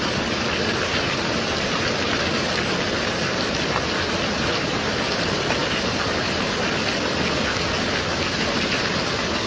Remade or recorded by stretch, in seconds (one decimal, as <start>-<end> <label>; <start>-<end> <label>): 0.0-5.6 recorded; 5.6-6.4 remade; 6.4-9.5 recorded